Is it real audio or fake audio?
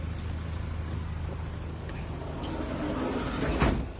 real